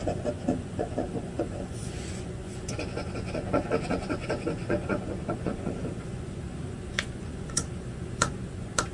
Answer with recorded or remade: remade